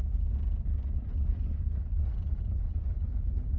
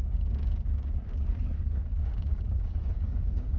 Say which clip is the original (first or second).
first